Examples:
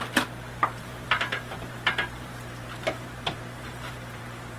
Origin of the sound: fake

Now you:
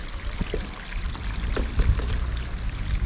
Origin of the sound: fake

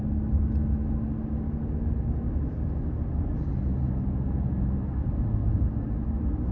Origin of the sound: real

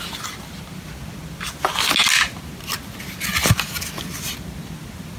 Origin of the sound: real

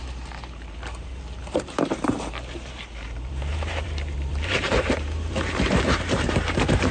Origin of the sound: fake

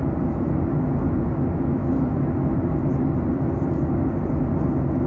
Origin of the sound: real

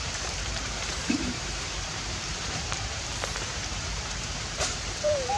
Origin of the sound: fake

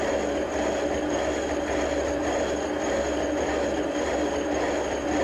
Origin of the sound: real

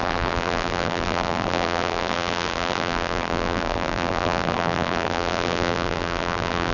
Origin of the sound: fake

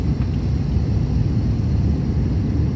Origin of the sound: real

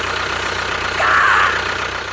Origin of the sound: fake